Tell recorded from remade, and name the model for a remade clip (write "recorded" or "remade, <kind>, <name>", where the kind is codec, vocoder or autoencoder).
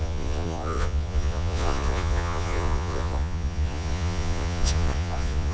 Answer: remade, vocoder, Vocos